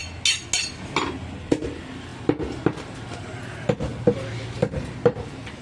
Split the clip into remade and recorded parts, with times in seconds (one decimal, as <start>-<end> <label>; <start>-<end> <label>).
0.0-1.6 recorded; 1.6-5.6 remade